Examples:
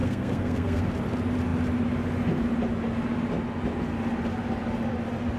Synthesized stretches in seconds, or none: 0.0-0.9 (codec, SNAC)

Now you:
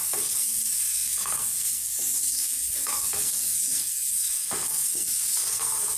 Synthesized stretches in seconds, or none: 0.0-6.0 (codec, SNAC)

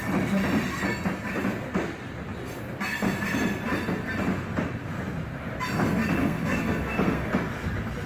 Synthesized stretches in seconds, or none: 6.2-7.3 (codec, SNAC)

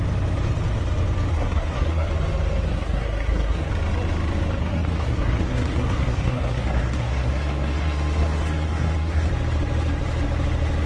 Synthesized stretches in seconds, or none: 1.3-2.1 (codec, SNAC); 2.7-3.7; 4.6-9.3